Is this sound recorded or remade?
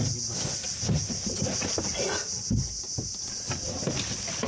recorded